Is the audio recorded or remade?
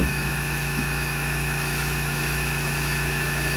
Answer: remade